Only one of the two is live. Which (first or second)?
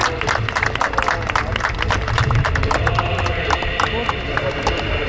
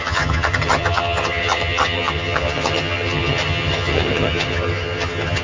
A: first